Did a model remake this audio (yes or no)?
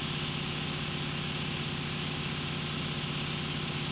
no